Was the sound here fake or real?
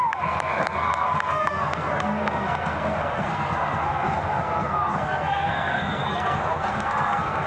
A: fake